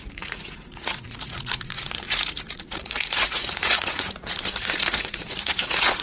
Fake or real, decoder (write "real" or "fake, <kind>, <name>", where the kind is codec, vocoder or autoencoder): fake, vocoder, Vocos